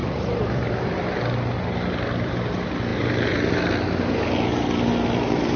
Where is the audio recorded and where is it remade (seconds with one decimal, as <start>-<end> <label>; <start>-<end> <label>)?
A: 0.0-0.7 remade; 0.7-5.6 recorded